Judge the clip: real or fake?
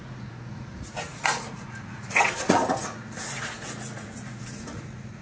fake